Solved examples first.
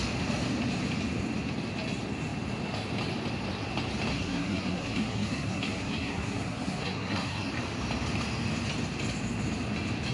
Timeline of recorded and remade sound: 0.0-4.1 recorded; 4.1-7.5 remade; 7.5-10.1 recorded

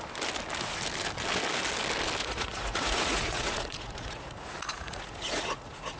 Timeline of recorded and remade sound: 0.0-2.2 recorded; 2.2-6.0 remade

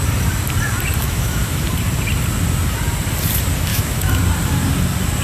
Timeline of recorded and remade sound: 0.0-1.0 recorded; 1.0-1.6 remade; 1.6-3.7 recorded; 3.7-4.2 remade; 4.2-5.2 recorded

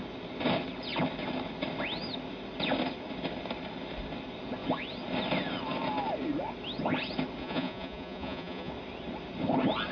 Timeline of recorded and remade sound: 0.0-7.4 recorded; 7.4-8.7 remade; 8.7-9.9 recorded